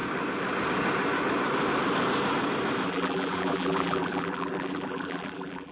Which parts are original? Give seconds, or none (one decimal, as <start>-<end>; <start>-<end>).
0.0-2.9

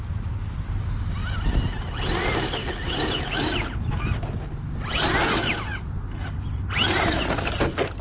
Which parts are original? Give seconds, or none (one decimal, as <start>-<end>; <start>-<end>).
0.0-8.0

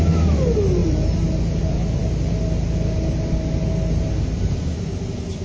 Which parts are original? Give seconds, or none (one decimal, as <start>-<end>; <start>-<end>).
0.0-0.8; 1.6-5.4